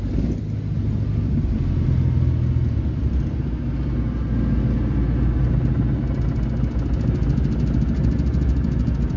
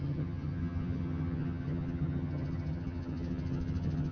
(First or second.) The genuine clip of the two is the first